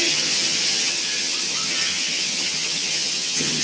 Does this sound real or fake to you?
fake